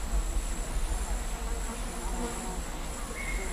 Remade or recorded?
recorded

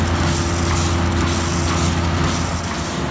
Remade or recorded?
recorded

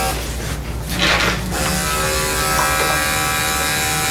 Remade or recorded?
recorded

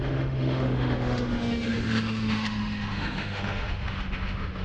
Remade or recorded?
remade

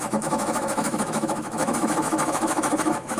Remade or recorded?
remade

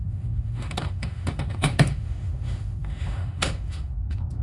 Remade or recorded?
remade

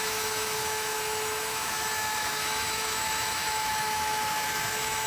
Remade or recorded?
remade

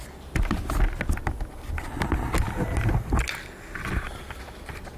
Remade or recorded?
recorded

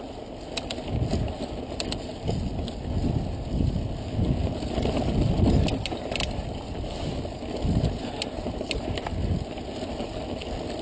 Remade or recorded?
recorded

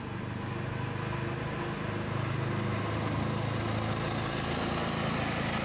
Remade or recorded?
recorded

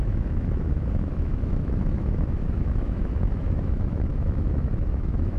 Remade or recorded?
remade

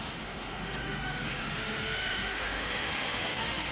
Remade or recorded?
remade